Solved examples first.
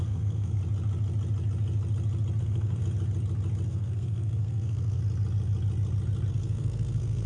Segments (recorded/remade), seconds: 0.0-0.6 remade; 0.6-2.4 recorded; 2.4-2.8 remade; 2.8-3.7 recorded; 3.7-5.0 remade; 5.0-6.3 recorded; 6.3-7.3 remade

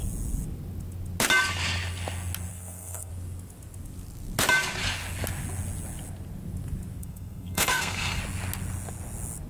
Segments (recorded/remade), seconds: 0.0-2.5 recorded; 2.5-3.1 remade; 3.1-7.0 recorded; 7.0-8.2 remade; 8.2-9.5 recorded

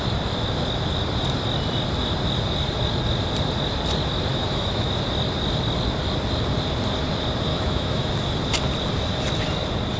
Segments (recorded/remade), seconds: 0.0-4.3 recorded; 4.3-4.9 remade; 4.9-7.5 recorded; 7.5-8.1 remade; 8.1-10.0 recorded

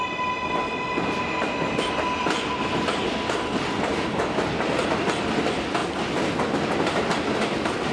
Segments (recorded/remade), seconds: 0.0-7.9 recorded